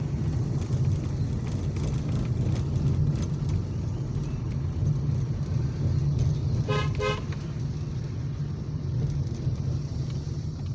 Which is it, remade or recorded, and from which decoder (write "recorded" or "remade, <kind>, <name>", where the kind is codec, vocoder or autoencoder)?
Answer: recorded